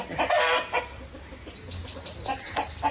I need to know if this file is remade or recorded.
recorded